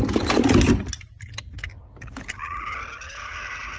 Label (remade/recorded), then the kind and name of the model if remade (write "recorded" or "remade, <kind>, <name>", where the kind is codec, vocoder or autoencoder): recorded